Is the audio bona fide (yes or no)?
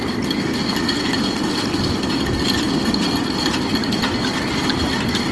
yes